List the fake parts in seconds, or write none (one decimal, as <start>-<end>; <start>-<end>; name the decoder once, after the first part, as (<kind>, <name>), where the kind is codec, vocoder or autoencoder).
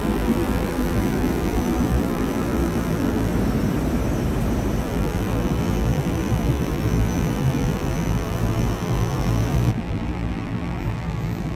0.0-3.3 (vocoder, BigVGAN v2); 4.8-11.5